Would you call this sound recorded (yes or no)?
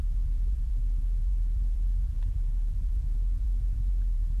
no